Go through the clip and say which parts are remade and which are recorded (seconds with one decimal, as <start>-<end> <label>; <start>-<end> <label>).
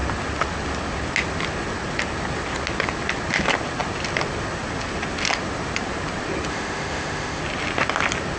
0.0-6.5 recorded; 6.5-7.4 remade; 7.4-8.4 recorded